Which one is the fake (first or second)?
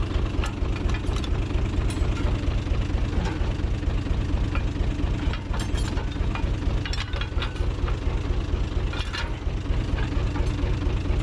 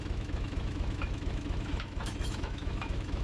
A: second